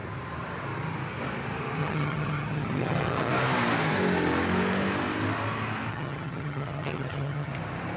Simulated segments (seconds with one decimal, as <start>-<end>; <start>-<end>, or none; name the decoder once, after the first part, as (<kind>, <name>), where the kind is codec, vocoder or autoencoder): 1.8-3.3 (vocoder, HiFi-GAN); 5.9-7.5